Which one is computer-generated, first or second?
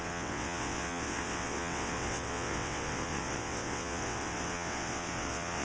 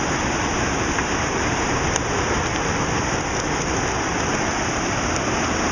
first